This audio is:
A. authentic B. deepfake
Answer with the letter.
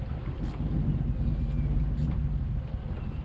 A